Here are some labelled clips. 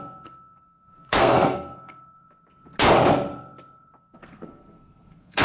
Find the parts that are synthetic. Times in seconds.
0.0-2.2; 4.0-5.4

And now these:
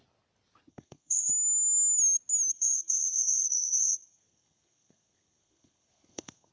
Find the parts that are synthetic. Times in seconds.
0.7-1.3; 2.5-6.5

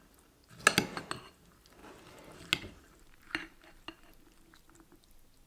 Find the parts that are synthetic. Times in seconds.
none

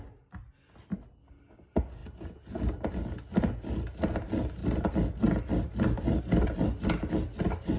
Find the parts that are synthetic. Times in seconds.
none

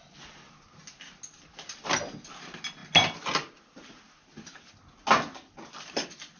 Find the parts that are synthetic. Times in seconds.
none

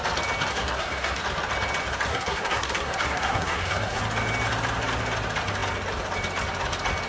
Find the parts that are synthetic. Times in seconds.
0.5-1.2; 2.1-4.0

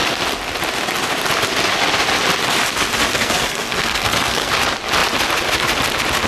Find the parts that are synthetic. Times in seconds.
3.1-4.5